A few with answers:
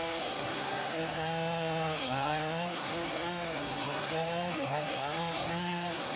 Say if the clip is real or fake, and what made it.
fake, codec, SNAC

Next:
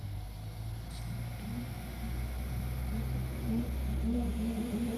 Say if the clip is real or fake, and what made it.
real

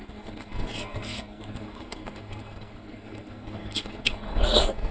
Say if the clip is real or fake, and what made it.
fake, codec, SNAC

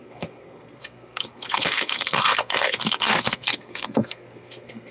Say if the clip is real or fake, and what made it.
fake, codec, SNAC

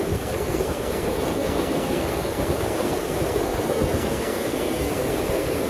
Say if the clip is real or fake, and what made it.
fake, codec, SNAC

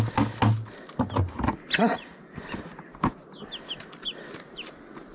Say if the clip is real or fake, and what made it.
real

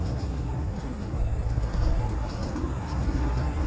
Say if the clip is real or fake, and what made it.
fake, codec, SNAC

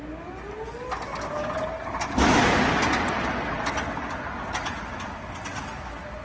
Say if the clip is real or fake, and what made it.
real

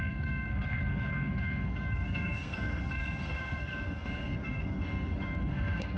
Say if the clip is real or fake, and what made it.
fake, codec, SNAC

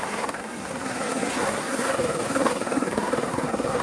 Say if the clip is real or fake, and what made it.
fake, codec, SNAC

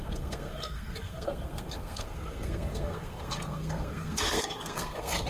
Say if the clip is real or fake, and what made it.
fake, codec, SNAC